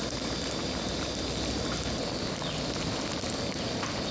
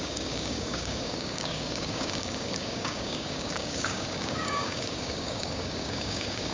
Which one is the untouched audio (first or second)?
first